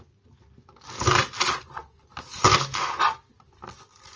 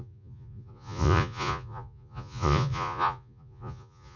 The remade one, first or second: second